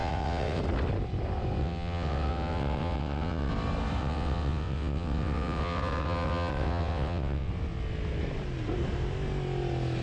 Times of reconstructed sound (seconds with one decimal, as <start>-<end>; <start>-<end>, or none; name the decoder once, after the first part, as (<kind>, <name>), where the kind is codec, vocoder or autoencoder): 0.0-0.6 (vocoder, WaveNeXt); 1.6-3.5; 4.0-7.5